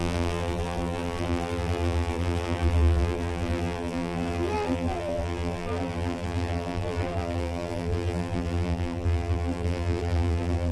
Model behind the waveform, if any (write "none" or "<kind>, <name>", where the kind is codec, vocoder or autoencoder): vocoder, BigVGAN v2